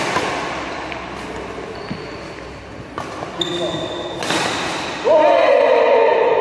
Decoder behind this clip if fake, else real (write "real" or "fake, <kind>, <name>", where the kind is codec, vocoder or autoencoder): real